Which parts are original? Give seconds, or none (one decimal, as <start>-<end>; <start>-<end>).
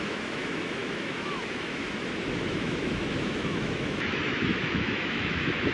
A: none